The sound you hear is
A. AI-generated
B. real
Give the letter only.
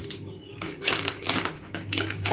A